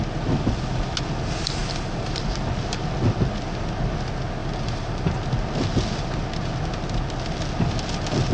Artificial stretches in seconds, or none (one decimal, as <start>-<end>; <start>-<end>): 1.6-2.2; 4.4-5.1